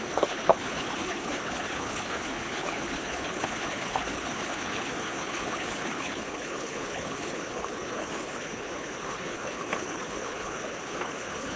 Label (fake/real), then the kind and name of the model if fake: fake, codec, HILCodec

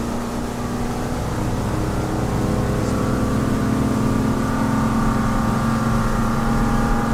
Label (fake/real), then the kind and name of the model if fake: real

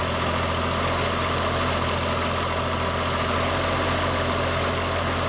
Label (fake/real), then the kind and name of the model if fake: real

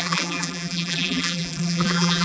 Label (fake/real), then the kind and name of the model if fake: fake, vocoder, BigVGAN v2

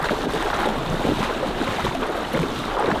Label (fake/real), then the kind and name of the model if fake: real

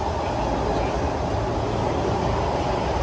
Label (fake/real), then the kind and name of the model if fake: real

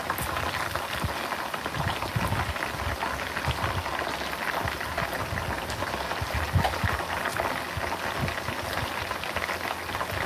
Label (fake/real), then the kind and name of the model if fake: real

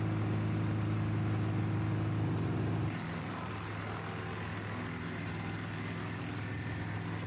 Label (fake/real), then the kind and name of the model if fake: real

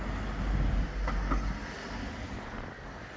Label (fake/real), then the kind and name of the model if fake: real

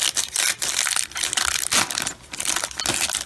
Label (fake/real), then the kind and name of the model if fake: real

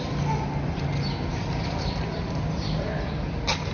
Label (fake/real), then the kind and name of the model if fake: real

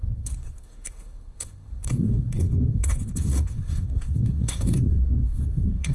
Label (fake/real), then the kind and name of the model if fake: fake, codec, SNAC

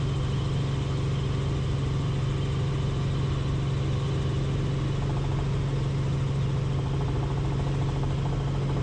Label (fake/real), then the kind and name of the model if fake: real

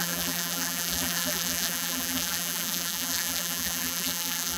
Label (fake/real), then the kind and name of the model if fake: fake, vocoder, BigVGAN v2